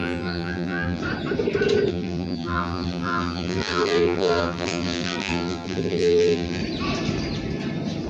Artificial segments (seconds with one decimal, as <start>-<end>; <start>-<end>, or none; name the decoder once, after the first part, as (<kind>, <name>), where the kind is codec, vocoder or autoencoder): 0.0-1.0 (vocoder, BigVGAN v2); 1.9-6.6